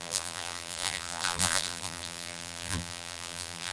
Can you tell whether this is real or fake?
fake